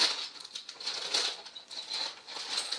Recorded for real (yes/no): no